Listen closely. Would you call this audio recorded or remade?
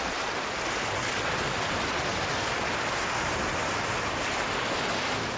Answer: recorded